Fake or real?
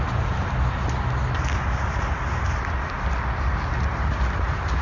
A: real